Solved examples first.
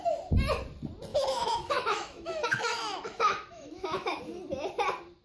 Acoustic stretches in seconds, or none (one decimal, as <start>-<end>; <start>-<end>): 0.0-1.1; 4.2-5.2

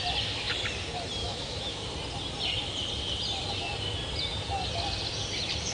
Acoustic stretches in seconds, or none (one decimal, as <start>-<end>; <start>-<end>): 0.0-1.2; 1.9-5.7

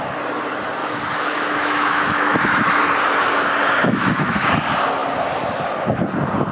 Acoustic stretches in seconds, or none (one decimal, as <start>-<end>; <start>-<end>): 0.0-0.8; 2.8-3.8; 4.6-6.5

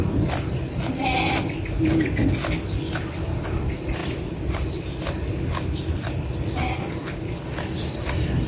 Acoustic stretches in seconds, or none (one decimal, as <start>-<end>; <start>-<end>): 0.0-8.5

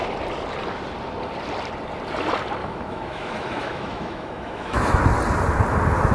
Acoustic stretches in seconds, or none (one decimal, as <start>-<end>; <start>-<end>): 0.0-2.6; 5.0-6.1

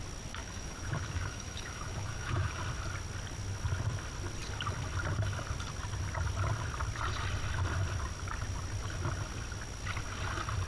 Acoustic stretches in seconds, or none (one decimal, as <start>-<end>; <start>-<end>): 0.0-0.4; 2.6-10.7